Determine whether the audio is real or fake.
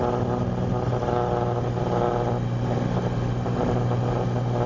real